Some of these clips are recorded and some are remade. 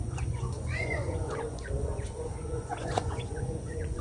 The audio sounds remade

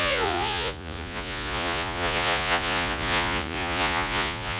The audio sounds remade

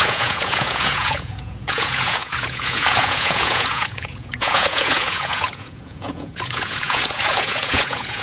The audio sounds remade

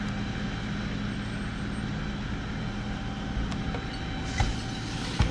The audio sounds recorded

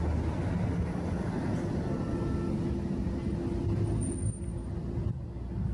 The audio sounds recorded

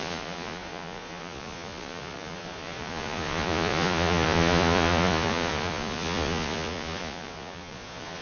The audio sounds remade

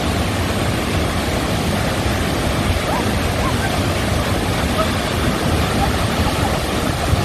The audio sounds recorded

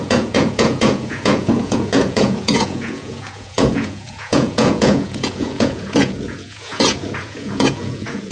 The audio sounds remade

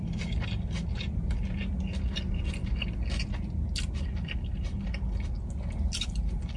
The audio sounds recorded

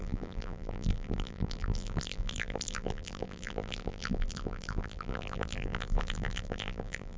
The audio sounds remade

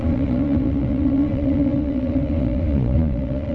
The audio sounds remade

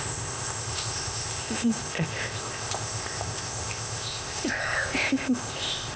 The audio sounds remade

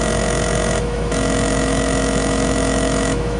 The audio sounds remade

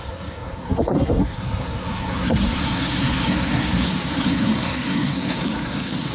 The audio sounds remade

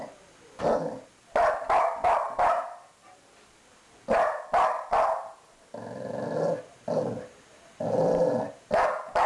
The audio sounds recorded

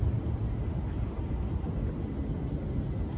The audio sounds recorded